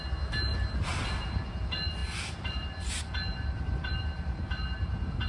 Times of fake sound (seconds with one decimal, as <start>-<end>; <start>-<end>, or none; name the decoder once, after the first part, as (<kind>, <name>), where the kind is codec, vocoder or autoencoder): 0.5-1.2 (vocoder, BigVGAN v2); 2.0-4.0